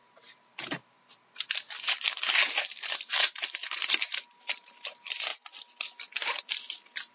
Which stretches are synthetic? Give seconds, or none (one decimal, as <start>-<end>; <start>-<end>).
0.0-5.3; 6.5-7.1